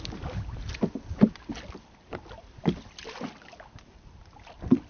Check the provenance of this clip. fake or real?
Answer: real